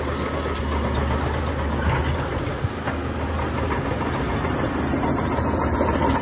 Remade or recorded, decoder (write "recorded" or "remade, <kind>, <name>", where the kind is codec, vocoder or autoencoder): recorded